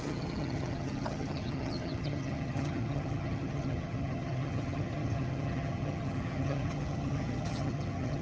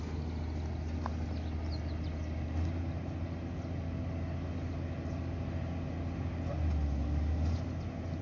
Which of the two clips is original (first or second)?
second